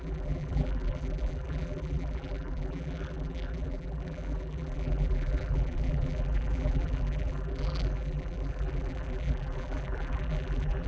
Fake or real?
fake